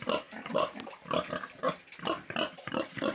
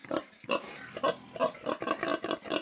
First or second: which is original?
second